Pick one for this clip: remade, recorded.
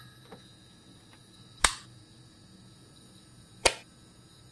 remade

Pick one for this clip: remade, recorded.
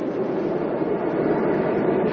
recorded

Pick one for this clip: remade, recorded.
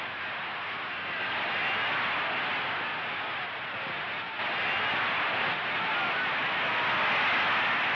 recorded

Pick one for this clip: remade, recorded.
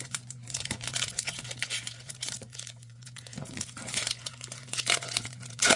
remade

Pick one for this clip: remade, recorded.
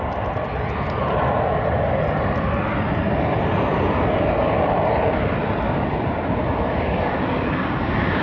recorded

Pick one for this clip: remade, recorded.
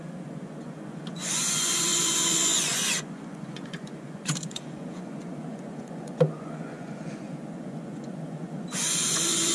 remade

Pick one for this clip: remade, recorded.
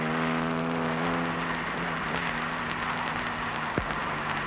recorded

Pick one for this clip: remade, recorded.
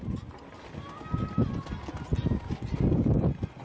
recorded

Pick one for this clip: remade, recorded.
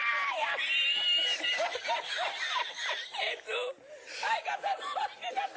recorded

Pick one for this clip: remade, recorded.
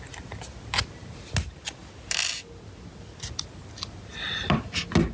recorded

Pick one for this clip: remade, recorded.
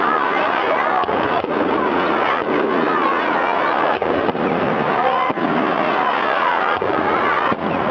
remade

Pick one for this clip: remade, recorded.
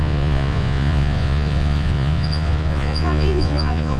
remade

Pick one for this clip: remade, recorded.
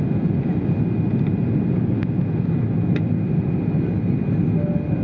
recorded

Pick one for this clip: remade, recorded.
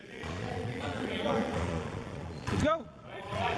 remade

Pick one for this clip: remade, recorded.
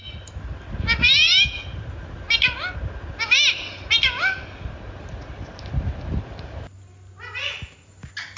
recorded